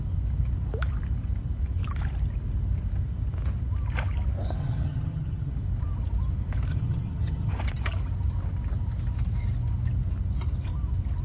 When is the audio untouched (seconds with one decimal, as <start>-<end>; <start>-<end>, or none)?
0.0-4.6; 5.5-6.7; 7.5-11.2